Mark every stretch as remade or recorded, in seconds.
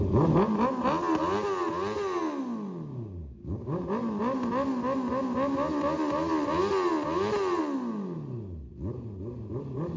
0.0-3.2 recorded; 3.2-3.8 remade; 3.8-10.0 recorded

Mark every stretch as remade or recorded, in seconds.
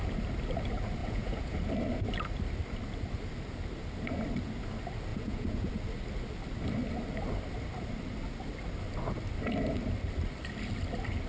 0.0-1.0 recorded; 1.0-1.6 remade; 1.6-5.1 recorded; 5.1-5.7 remade; 5.7-11.3 recorded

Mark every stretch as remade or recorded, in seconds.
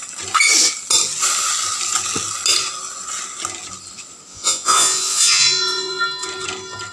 0.0-4.3 recorded; 4.3-6.0 remade; 6.0-6.9 recorded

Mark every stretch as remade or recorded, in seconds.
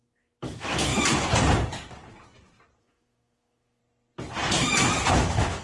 0.0-0.9 remade; 0.9-2.8 recorded; 2.8-3.8 remade; 3.8-5.1 recorded; 5.1-5.6 remade